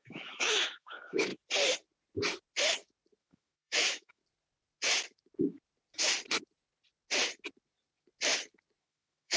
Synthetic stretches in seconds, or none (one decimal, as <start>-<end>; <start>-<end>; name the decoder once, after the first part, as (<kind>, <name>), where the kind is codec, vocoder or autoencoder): 0.0-1.3 (autoencoder, DAC-VAE); 3.2-4.2; 8.8-9.4